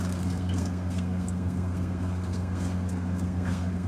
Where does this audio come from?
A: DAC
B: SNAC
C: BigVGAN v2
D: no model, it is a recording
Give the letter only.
B